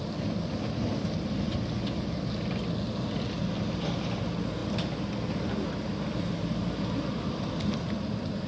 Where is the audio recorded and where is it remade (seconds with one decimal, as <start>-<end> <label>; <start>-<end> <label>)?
0.0-8.5 recorded